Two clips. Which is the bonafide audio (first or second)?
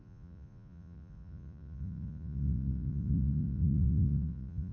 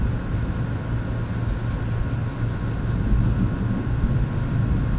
second